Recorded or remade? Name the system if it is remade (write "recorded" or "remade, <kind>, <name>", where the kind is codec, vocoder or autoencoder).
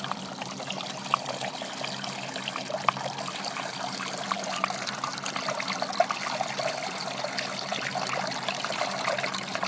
recorded